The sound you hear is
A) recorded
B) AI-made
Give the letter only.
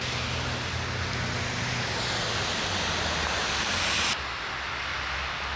A